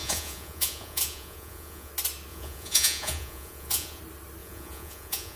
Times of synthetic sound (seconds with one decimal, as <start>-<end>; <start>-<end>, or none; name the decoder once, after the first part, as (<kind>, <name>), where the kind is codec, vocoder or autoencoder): 0.0-1.9 (vocoder, Vocos); 2.3-4.0; 4.4-5.4